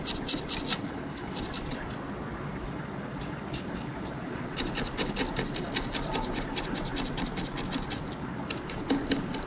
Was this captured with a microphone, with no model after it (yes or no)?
yes